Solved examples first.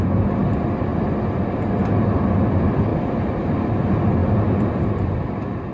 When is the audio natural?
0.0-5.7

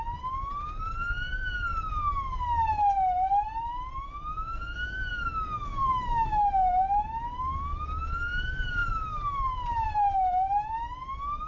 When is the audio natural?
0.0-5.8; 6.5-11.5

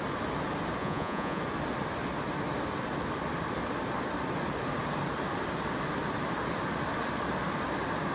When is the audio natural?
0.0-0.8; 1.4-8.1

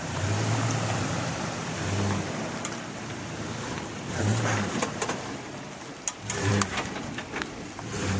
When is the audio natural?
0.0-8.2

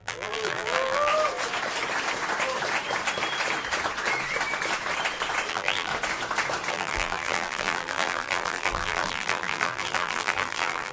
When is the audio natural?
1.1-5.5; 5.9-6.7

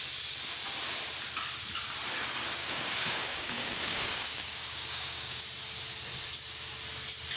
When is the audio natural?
0.0-2.6; 5.4-7.4

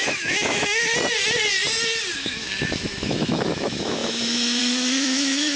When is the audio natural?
0.9-2.2